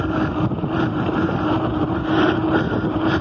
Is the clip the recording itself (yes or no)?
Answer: yes